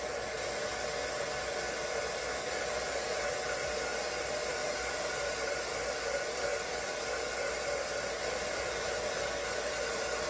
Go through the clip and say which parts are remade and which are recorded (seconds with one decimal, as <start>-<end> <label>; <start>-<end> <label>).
0.0-10.3 recorded